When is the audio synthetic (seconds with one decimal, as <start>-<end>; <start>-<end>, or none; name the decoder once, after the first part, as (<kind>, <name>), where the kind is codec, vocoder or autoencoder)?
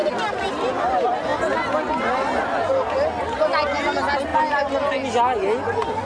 none